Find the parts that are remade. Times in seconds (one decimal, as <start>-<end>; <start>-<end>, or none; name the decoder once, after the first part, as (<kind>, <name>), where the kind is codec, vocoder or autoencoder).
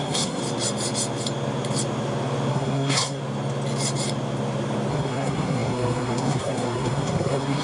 0.0-0.4 (codec, SNAC); 2.5-3.2; 4.9-7.6